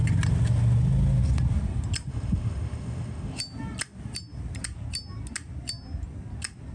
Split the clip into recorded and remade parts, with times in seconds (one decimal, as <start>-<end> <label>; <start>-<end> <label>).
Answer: 0.0-2.1 recorded; 2.1-3.4 remade; 3.4-6.7 recorded